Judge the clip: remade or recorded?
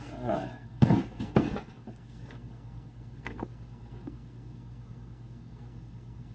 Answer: remade